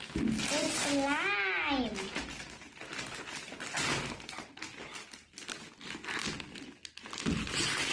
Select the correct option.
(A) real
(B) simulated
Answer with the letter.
A